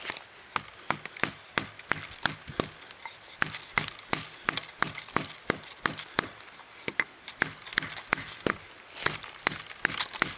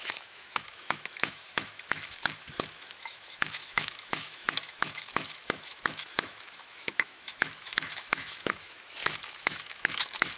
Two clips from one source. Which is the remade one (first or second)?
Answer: second